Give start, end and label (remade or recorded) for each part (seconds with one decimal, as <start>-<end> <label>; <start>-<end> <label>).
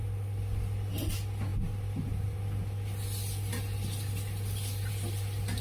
0.0-5.6 recorded